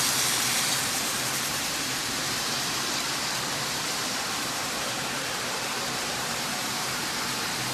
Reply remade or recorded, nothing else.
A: remade